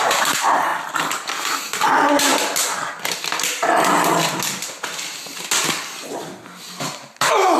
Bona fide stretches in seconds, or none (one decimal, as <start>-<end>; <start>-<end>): 0.7-1.6; 2.3-6.8